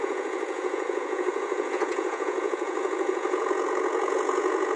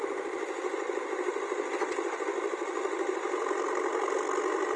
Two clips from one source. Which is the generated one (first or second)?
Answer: first